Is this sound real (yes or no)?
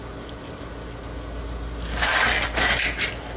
yes